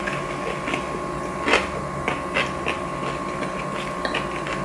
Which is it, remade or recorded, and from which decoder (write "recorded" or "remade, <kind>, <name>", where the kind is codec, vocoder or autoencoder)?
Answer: recorded